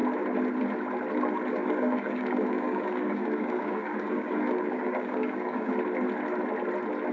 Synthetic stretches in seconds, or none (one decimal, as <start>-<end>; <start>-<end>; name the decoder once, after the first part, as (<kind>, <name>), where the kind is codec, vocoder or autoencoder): 1.5-5.7 (codec, DAC)